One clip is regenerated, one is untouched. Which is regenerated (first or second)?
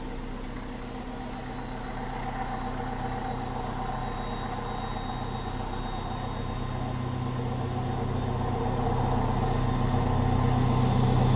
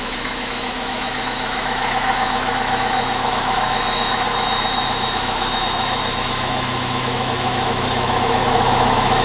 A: second